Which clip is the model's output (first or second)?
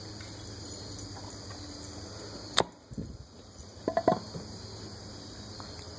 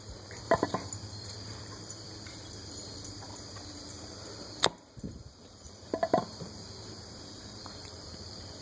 second